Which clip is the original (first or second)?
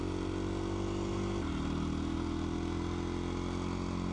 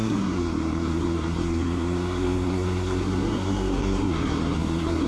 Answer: first